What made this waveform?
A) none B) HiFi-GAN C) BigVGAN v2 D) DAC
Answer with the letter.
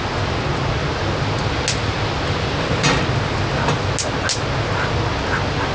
A